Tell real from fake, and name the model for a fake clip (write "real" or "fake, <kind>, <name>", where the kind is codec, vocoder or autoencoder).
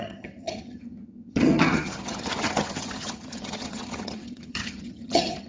fake, vocoder, HiFi-GAN